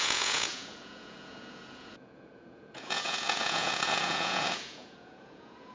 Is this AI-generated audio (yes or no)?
yes